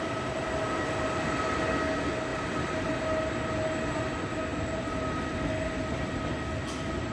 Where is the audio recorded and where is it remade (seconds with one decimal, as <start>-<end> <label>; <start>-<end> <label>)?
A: 0.0-2.3 recorded; 2.3-2.9 remade; 2.9-7.1 recorded